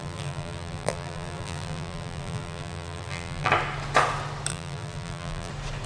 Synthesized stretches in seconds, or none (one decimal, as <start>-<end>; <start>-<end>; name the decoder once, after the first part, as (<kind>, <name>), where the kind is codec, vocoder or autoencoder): 0.0-3.5 (vocoder, BigVGAN v2); 4.5-5.5